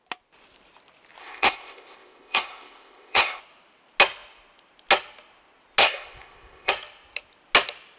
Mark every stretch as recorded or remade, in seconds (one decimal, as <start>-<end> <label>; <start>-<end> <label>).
0.0-1.2 recorded; 1.2-3.4 remade; 3.4-5.8 recorded; 5.8-6.7 remade; 6.7-8.0 recorded